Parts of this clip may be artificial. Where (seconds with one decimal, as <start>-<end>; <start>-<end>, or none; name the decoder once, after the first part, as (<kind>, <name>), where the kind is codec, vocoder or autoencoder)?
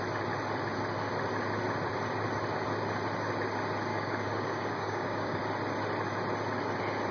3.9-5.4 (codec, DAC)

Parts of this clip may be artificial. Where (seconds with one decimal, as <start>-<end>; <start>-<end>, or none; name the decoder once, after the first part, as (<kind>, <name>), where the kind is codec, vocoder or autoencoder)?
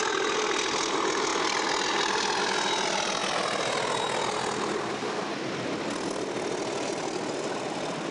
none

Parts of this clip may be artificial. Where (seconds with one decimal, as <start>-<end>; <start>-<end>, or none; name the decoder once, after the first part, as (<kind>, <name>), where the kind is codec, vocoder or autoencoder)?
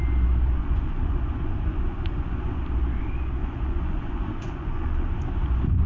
0.6-2.6 (vocoder, Vocos); 3.4-5.9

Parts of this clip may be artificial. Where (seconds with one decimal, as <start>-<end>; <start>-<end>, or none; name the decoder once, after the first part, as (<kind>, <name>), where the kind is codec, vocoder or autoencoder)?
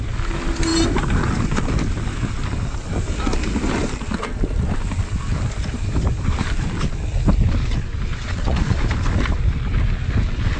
8.1-8.8 (vocoder, Vocos)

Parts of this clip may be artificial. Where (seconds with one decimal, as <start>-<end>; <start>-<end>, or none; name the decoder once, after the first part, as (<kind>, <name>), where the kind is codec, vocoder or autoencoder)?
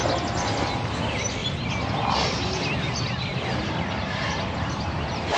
none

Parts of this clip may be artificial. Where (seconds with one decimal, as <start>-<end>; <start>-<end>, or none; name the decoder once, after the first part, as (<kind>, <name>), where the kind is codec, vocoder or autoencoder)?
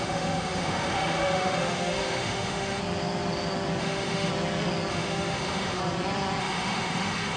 0.0-2.8 (autoencoder, DAC-VAE); 3.8-4.3; 4.9-5.8; 6.4-7.4